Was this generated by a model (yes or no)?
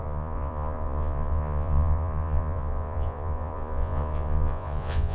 yes